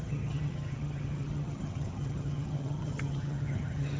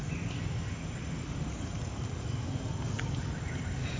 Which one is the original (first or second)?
second